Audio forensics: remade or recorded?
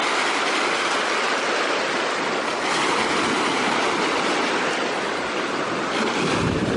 recorded